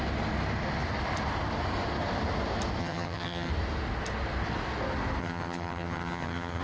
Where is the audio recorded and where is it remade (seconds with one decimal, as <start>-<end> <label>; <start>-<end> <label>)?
0.0-2.8 recorded; 2.8-3.5 remade; 3.5-5.2 recorded; 5.2-6.6 remade